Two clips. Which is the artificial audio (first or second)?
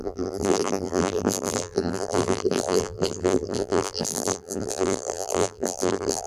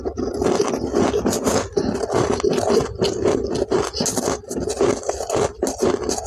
first